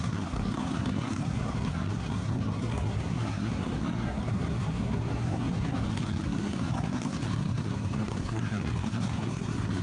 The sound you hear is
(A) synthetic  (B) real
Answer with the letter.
A